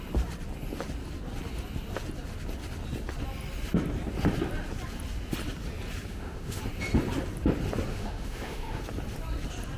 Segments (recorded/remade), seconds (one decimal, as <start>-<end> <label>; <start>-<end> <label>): 0.0-6.1 recorded; 6.1-6.6 remade; 6.6-7.9 recorded; 7.9-8.8 remade; 8.8-9.8 recorded